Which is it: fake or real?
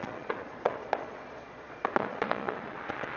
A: fake